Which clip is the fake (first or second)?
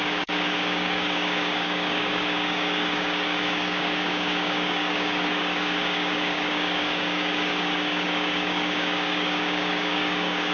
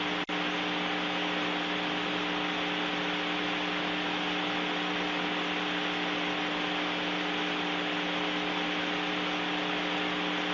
first